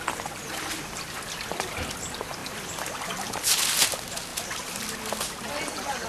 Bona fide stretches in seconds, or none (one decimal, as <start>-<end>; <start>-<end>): 0.0-6.1